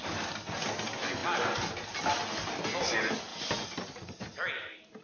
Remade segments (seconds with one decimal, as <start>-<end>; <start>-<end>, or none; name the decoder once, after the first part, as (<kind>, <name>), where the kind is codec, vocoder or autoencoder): 3.3-4.6 (vocoder, BigVGAN v2)